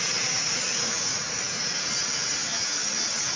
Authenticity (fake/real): real